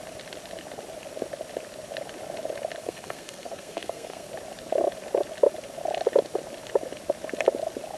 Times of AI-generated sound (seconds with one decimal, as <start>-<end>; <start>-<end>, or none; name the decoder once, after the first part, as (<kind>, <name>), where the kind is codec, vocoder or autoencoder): 2.8-4.3 (codec, SNAC)